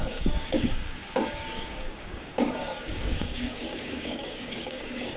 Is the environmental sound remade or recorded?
remade